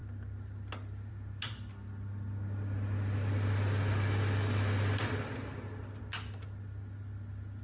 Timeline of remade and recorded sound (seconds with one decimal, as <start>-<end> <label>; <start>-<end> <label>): 0.0-7.6 recorded